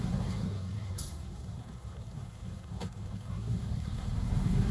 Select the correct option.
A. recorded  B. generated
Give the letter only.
B